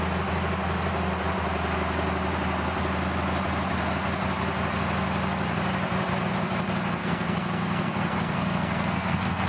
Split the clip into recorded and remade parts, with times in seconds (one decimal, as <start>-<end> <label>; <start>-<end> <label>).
0.0-7.0 recorded; 7.0-9.5 remade